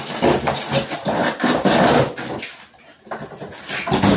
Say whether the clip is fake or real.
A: real